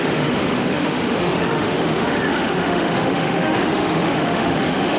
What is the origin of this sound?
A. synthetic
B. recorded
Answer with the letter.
A